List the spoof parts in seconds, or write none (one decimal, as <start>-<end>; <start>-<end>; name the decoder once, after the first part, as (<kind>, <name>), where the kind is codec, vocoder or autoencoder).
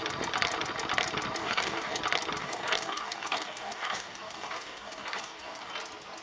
1.4-2.0 (codec, DAC); 2.4-5.7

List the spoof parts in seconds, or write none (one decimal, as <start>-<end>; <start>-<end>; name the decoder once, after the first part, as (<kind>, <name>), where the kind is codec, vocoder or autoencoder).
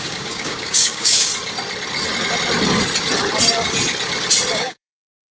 0.0-1.3 (codec, DAC); 4.5-5.3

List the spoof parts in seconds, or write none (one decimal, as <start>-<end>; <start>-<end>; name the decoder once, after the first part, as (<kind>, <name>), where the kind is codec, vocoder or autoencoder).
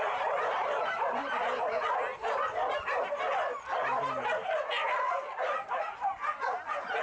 none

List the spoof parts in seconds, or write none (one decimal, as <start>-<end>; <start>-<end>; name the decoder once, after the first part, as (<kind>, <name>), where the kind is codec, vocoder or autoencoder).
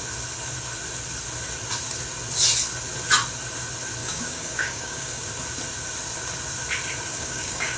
4.0-5.2 (codec, DAC); 7.1-7.8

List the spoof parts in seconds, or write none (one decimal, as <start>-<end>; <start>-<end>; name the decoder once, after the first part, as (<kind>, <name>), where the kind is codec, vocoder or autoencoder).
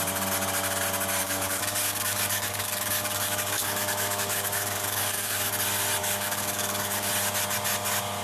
1.2-5.5 (codec, DAC); 6.0-7.1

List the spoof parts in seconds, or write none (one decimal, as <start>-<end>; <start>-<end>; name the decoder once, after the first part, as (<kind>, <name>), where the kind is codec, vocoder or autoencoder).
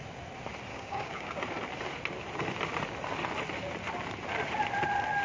0.7-1.4 (codec, DAC)